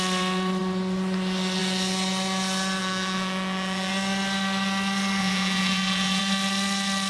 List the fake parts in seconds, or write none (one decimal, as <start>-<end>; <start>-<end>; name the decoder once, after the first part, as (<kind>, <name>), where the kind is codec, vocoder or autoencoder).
2.8-3.9 (vocoder, Vocos); 5.2-6.2